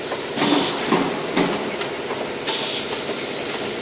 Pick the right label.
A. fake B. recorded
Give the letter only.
B